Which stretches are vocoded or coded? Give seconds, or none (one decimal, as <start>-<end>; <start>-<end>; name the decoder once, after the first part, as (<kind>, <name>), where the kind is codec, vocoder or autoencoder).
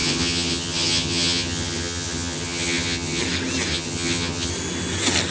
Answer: 0.0-3.2 (vocoder, HiFi-GAN); 3.7-4.5